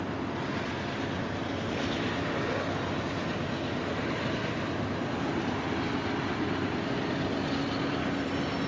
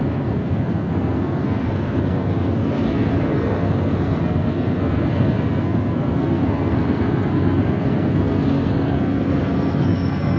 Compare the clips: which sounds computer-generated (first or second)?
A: second